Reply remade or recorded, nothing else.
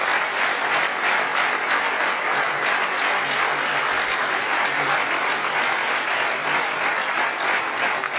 recorded